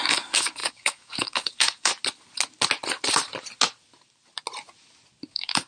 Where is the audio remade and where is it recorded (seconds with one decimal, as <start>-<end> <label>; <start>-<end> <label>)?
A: 0.0-1.9 remade; 1.9-5.3 recorded; 5.3-5.7 remade